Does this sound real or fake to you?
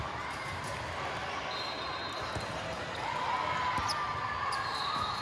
real